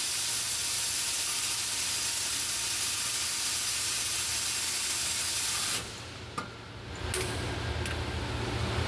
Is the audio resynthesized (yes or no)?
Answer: no